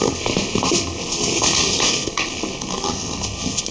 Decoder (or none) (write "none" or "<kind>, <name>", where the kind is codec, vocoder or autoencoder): codec, SNAC